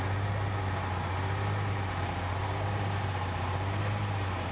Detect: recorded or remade recorded